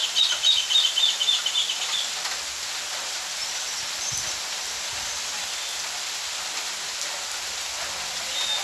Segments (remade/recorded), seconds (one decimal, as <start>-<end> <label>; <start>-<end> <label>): 0.0-1.0 remade; 1.0-3.4 recorded; 3.4-5.5 remade; 5.5-8.6 recorded